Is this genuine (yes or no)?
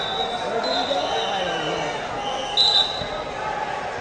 yes